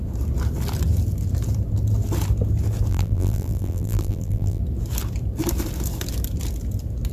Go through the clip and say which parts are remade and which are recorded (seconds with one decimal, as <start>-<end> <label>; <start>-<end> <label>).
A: 0.0-2.9 recorded; 2.9-4.6 remade; 4.6-7.1 recorded